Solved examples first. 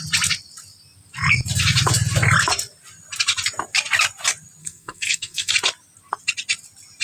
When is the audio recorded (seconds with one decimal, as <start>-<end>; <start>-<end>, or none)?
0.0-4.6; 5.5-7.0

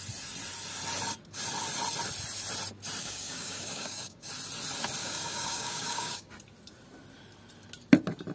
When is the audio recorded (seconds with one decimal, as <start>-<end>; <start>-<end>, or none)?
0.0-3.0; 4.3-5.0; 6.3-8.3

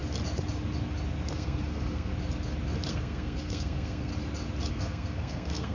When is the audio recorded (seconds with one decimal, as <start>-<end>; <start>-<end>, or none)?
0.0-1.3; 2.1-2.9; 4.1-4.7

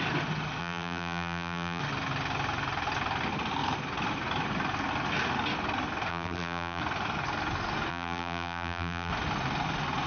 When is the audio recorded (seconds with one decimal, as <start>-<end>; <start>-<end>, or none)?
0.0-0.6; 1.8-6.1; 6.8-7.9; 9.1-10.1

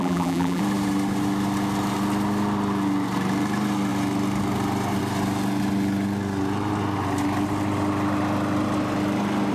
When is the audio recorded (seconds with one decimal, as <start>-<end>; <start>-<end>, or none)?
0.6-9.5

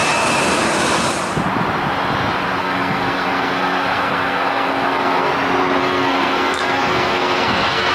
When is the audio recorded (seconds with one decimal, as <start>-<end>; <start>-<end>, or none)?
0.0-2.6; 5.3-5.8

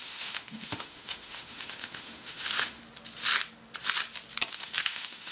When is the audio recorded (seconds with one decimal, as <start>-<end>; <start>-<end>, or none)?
2.8-4.5